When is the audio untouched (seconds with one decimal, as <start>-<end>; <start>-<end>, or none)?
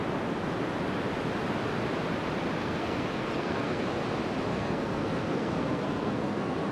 0.0-2.6; 4.0-4.5